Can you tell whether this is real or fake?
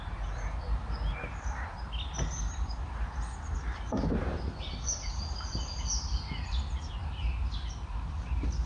real